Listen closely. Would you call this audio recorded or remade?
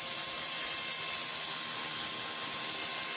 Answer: recorded